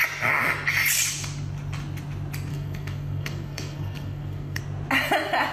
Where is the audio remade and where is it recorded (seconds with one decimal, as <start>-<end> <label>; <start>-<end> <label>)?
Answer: 0.0-2.5 recorded; 2.5-4.6 remade; 4.6-5.5 recorded